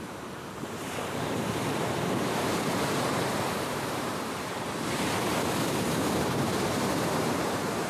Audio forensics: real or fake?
fake